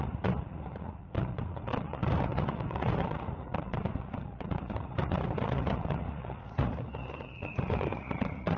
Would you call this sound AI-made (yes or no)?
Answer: yes